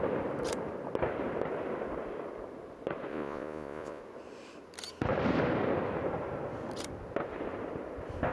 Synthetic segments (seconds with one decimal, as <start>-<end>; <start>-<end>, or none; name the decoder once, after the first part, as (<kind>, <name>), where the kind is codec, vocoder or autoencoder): 3.1-4.0 (vocoder, Vocos)